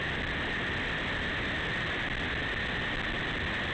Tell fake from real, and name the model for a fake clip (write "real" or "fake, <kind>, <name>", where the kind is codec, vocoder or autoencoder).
real